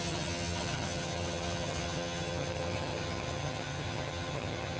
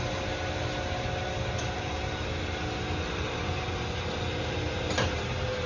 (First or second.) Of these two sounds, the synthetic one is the first